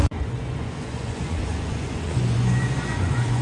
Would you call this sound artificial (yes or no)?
yes